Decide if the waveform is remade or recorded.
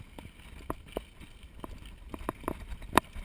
recorded